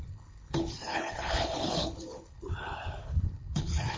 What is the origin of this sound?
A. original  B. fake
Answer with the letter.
B